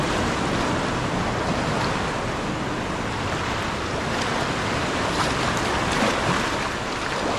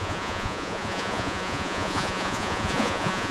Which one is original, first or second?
first